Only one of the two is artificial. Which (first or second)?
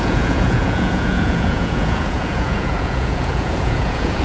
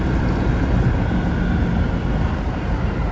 first